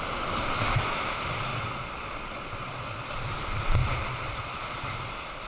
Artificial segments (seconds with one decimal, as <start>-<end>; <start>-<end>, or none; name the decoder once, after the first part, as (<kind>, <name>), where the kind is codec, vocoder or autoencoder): 1.5-3.3 (vocoder, Vocos); 3.8-4.6